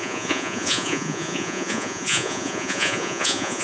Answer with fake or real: fake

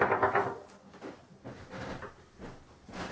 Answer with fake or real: real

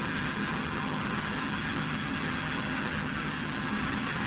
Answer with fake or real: fake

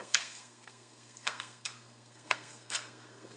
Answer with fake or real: fake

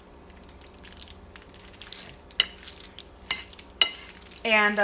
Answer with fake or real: real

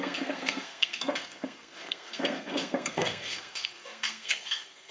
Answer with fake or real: fake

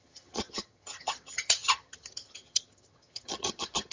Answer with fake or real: fake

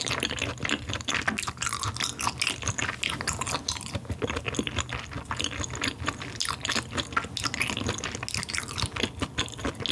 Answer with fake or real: real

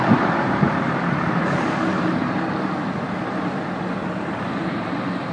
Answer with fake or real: fake